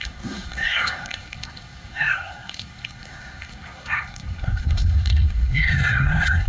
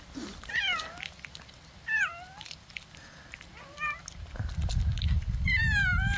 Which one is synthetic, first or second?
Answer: first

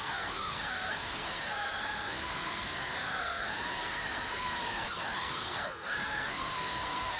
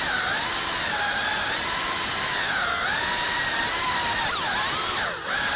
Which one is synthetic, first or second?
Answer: first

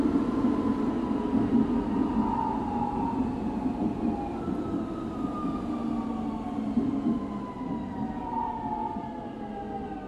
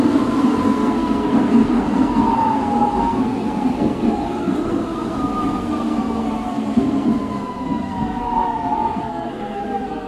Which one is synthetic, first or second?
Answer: second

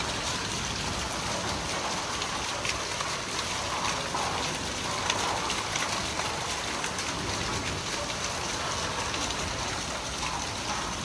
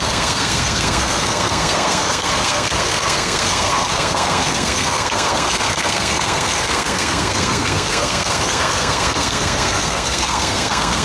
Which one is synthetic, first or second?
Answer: second